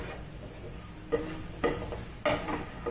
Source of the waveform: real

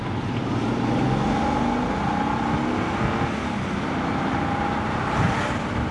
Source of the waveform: real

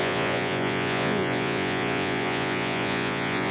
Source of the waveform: fake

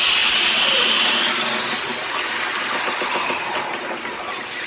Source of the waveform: real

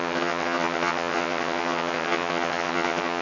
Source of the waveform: fake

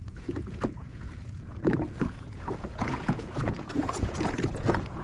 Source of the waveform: fake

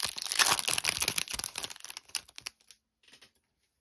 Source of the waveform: real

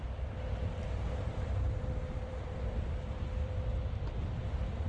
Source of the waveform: fake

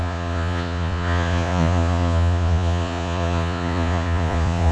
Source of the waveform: fake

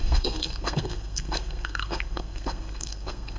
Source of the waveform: fake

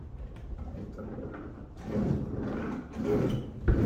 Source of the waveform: fake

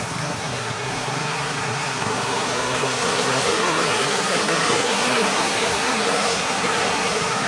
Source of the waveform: fake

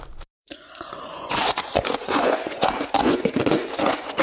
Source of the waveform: fake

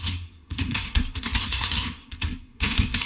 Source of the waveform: fake